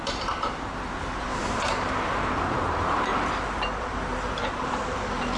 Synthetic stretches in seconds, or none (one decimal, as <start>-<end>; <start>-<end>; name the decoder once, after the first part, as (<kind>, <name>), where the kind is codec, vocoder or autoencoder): 0.0-3.1 (vocoder, BigVGAN v2); 3.8-5.4

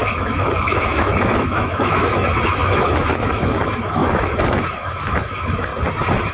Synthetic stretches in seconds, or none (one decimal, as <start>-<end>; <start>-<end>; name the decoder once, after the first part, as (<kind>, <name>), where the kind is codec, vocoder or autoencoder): 0.0-5.7 (autoencoder, DAC-VAE)

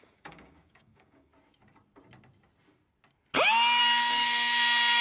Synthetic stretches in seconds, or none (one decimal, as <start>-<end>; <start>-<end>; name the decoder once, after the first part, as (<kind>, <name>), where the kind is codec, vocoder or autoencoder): 0.0-1.3 (codec, DAC); 3.8-5.0

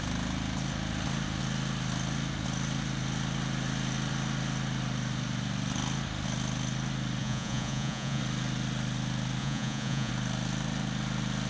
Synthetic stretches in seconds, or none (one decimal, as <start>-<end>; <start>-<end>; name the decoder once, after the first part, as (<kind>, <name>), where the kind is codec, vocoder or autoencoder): 7.2-8.2 (vocoder, Vocos); 9.4-10.1